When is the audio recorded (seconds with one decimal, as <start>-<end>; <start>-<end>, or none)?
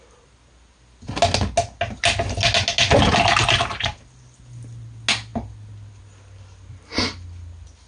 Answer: 0.0-7.9